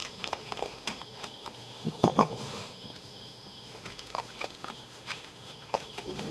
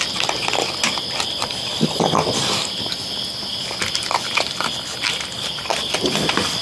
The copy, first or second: first